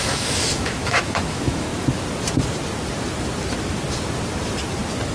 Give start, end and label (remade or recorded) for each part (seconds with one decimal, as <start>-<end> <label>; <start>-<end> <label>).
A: 0.0-1.7 remade; 1.7-5.1 recorded